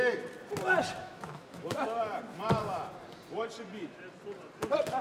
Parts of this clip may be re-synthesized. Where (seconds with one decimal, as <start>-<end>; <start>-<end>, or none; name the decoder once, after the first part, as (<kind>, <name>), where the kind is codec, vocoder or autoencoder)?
1.0-2.0 (autoencoder, DAC-VAE)